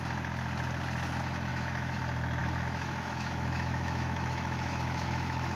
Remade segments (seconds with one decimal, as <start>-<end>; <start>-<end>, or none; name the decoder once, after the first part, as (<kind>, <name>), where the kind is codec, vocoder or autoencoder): 1.5-2.0 (autoencoder, DAC-VAE); 2.4-5.6